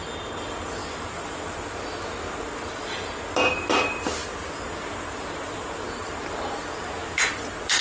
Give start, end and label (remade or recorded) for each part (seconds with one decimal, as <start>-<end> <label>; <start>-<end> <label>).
0.0-0.8 recorded; 0.8-2.3 remade; 2.3-4.2 recorded; 4.2-5.9 remade; 5.9-7.0 recorded; 7.0-7.8 remade